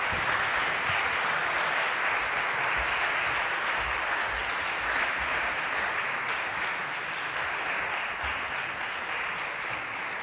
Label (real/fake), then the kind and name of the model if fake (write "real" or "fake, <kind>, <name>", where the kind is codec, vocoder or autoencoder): real